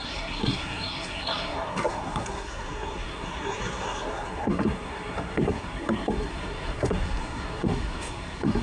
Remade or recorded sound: remade